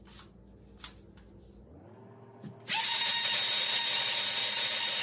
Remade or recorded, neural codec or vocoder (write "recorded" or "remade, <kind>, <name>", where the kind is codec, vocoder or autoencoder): recorded